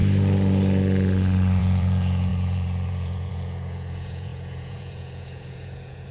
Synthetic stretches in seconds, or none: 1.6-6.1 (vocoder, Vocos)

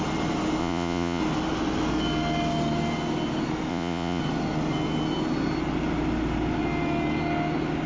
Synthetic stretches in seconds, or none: 0.6-1.2 (vocoder, Vocos); 3.7-4.2

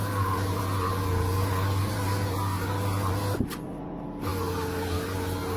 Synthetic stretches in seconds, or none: none

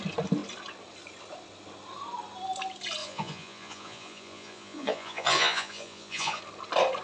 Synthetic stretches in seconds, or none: 3.0-6.4 (vocoder, Vocos)